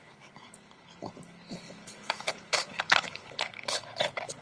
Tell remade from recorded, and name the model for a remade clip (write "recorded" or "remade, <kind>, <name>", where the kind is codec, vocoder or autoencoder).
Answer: remade, codec, HILCodec